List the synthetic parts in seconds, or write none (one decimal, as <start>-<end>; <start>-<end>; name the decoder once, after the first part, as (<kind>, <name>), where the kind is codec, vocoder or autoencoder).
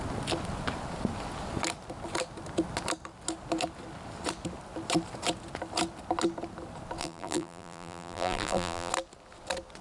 7.0-8.9 (vocoder, BigVGAN v2)